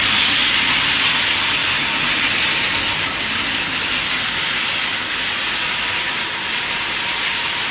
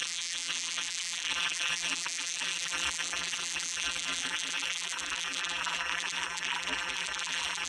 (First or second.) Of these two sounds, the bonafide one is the first